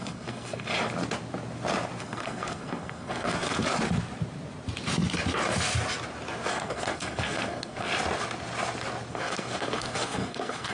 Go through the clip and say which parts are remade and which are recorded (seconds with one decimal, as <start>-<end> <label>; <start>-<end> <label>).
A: 0.0-0.7 remade; 0.7-2.0 recorded; 2.0-3.6 remade; 3.6-6.5 recorded; 6.5-7.9 remade; 7.9-9.1 recorded; 9.1-10.7 remade